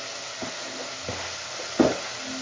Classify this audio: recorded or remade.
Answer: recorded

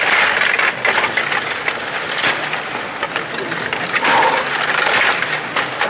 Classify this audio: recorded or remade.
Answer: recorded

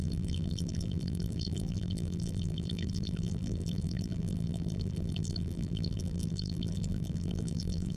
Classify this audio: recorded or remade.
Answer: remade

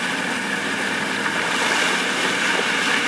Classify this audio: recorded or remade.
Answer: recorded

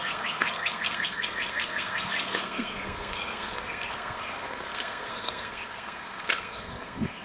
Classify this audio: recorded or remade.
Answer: remade